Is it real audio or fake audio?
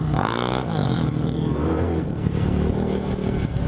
fake